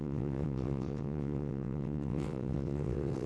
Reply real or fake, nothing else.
fake